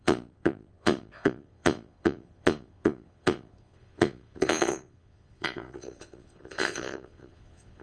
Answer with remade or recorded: remade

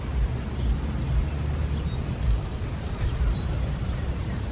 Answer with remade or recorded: recorded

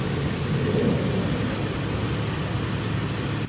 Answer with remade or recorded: recorded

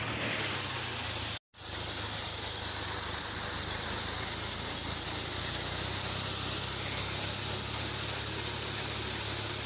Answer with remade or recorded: recorded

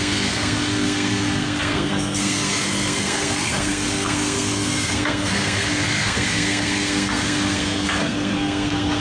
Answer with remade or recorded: remade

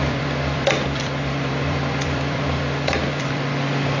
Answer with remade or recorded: remade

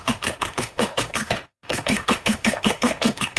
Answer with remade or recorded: remade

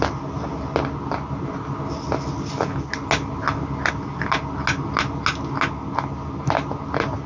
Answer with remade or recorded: recorded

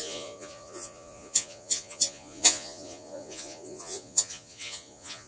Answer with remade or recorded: remade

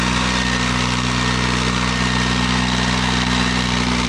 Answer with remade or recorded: recorded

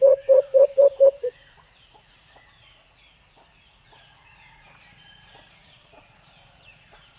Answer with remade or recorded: remade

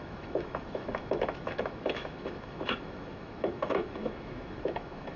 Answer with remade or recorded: remade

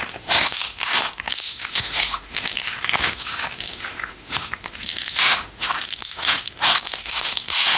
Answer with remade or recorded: remade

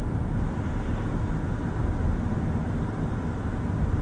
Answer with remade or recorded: recorded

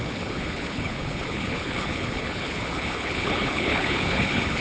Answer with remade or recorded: remade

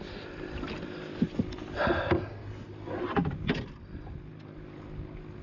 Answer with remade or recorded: recorded